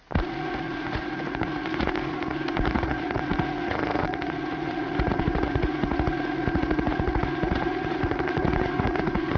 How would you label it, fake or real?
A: fake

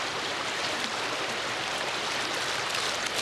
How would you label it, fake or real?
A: real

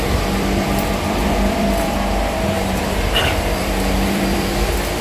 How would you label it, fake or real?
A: fake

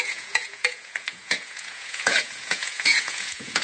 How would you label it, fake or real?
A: fake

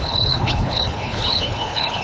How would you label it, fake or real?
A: fake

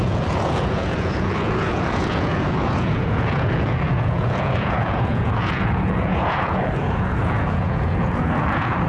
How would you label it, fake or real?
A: fake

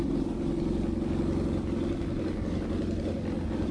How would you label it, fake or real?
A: real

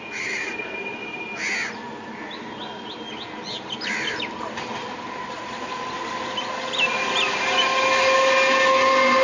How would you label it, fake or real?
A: real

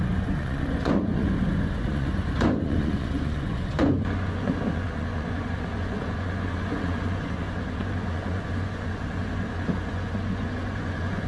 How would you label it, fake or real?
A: fake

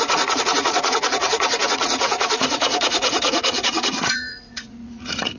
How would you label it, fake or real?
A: fake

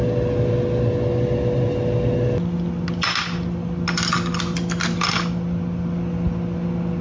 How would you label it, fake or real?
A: real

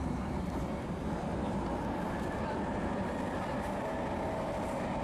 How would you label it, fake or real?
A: real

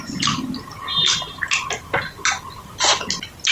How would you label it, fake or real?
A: real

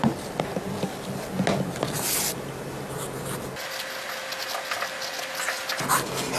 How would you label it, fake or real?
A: real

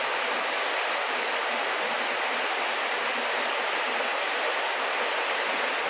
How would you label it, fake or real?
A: real